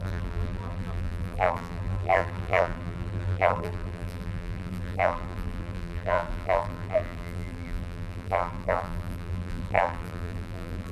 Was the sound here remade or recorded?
remade